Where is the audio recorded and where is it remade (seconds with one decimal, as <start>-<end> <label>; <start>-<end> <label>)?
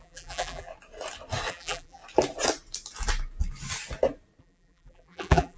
0.0-0.7 remade; 0.7-1.5 recorded; 1.5-2.0 remade; 2.0-4.4 recorded; 4.4-5.6 remade